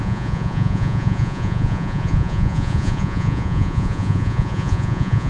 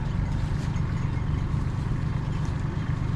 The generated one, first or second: first